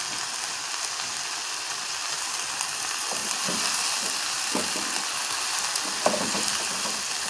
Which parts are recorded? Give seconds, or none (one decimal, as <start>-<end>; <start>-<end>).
0.0-7.3